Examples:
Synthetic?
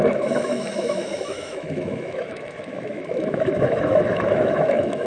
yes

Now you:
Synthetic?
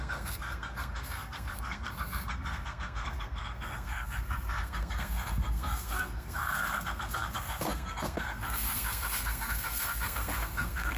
yes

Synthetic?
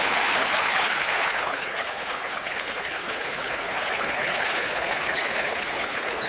yes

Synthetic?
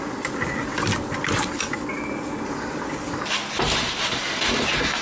no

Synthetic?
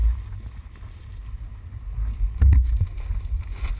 no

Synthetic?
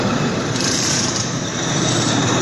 yes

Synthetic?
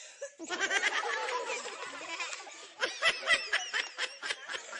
no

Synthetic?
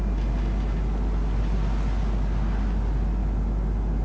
no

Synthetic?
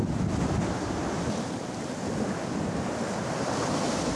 no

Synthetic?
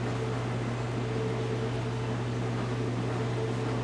no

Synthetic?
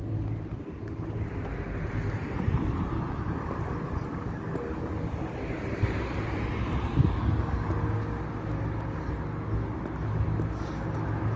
no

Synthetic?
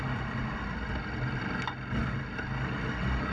no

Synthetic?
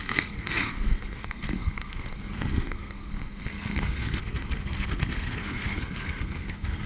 yes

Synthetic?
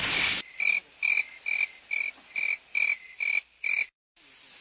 no